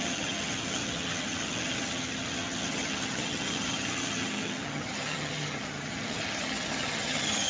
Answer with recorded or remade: remade